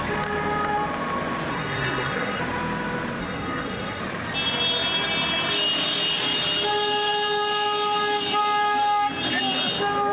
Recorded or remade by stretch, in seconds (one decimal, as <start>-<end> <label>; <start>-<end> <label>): 0.0-1.5 recorded; 1.5-2.4 remade; 2.4-3.2 recorded; 3.2-4.0 remade; 4.0-10.1 recorded